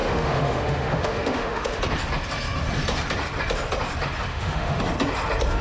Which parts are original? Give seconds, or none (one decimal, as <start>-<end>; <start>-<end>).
1.8-4.3; 4.8-5.6